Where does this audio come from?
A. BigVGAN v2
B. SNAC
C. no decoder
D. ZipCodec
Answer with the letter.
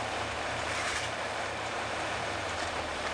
A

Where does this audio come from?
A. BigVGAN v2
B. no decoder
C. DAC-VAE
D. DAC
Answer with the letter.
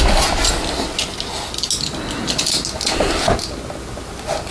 B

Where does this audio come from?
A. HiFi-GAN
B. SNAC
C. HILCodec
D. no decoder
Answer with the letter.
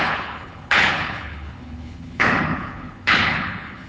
C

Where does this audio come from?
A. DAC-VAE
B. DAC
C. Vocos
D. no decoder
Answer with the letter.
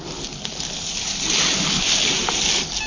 D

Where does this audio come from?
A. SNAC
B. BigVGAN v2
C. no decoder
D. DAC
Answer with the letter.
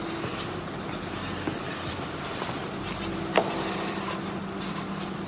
C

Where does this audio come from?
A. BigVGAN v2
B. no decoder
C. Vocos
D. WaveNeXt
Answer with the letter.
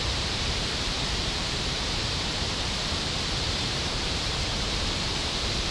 A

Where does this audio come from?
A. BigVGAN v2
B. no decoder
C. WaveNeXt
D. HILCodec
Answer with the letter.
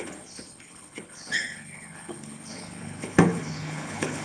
D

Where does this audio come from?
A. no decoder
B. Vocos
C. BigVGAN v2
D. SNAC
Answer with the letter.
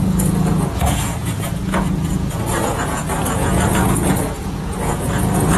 B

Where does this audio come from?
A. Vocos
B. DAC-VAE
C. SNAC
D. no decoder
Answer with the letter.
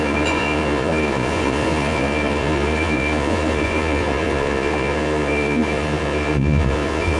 A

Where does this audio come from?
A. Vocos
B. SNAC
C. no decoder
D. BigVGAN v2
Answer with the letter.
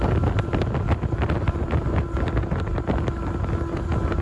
C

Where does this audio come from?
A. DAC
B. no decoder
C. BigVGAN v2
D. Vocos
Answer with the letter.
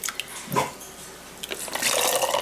B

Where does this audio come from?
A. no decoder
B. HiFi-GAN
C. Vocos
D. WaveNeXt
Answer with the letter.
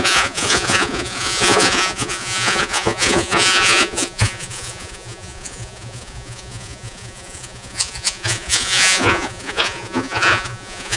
C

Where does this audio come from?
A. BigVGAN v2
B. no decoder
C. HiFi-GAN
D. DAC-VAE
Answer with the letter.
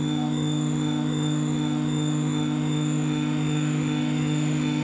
D